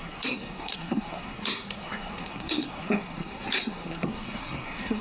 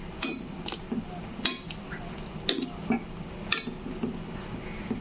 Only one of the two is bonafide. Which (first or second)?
second